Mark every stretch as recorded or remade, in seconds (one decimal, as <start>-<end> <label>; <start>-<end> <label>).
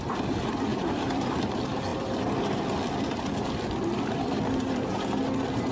0.0-0.7 recorded; 0.7-1.4 remade; 1.4-1.9 recorded; 1.9-5.2 remade; 5.2-5.7 recorded